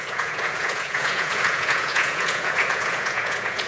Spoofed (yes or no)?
yes